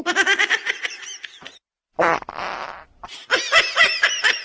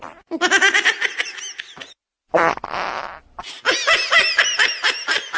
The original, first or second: second